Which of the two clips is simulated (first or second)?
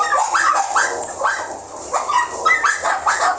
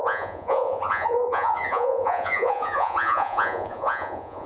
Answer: second